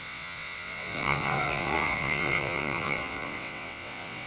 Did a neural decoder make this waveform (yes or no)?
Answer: yes